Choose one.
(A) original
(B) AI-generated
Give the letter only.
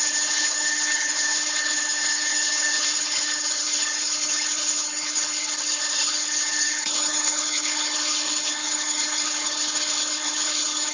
B